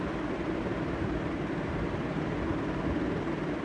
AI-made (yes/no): no